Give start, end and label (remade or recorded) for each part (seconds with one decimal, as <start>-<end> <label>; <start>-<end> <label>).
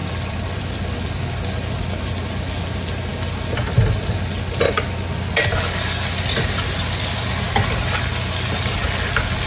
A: 0.0-0.6 remade; 0.6-9.5 recorded